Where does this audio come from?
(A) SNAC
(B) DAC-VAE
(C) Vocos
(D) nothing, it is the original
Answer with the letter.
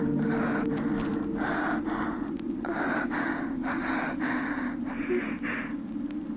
D